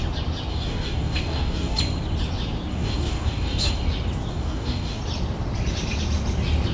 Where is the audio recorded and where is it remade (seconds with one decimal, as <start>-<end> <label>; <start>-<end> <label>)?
0.0-0.5 recorded; 0.5-1.8 remade; 1.8-2.7 recorded; 2.7-3.7 remade; 3.7-4.3 recorded; 4.3-5.0 remade; 5.0-6.7 recorded